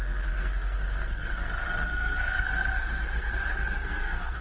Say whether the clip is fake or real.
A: fake